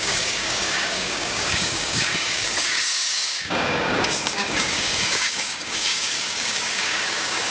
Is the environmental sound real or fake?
fake